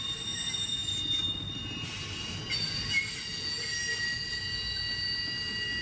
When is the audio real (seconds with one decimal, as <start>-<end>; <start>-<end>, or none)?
0.0-5.8